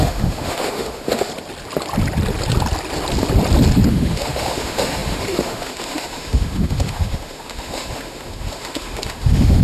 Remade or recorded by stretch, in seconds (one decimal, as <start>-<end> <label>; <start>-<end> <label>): 0.0-1.3 remade; 1.3-3.9 recorded; 3.9-9.6 remade